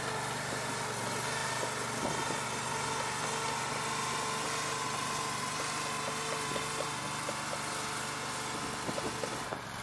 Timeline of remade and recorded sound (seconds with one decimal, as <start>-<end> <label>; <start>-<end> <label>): 0.0-9.8 recorded